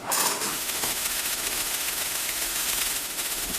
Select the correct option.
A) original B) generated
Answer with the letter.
B